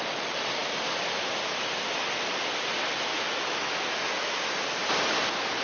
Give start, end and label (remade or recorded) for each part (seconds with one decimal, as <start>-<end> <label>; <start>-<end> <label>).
0.0-3.1 recorded; 3.1-4.4 remade; 4.4-5.6 recorded